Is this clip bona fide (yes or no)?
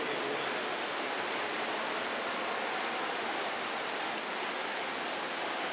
yes